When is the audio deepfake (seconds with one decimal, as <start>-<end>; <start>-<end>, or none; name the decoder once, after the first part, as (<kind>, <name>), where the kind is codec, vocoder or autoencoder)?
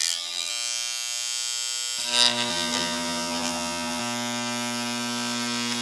0.0-0.5 (vocoder, BigVGAN v2); 2.5-4.0